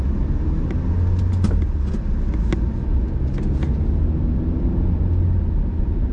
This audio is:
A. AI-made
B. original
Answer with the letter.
B